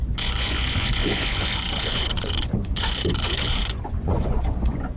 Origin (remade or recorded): remade